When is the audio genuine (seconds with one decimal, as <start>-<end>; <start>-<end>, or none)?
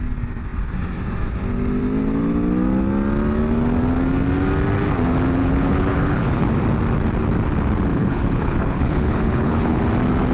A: 0.0-5.4; 6.6-7.9; 9.8-10.3